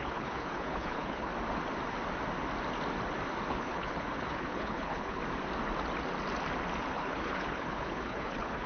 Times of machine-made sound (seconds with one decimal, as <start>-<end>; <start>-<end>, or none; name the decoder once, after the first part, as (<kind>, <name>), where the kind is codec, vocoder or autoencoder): 0.0-1.3 (codec, HILCodec); 3.5-5.2; 6.9-8.7